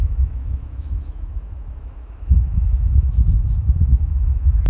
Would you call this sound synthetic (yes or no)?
yes